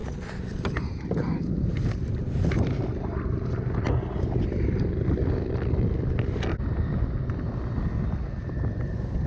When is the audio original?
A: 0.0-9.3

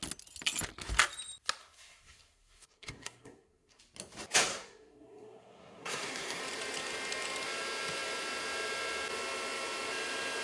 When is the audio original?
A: 0.0-1.6; 3.8-4.5; 6.4-10.4

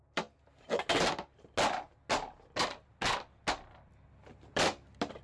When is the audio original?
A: 0.0-5.2

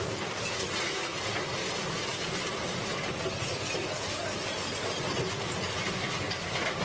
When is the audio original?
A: 0.0-6.8

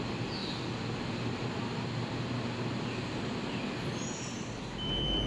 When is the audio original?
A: 0.0-5.3

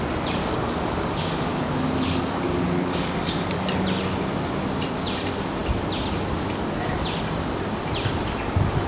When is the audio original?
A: 0.0-0.4; 3.7-8.9

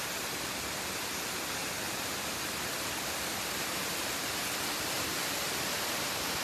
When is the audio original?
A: 0.0-6.4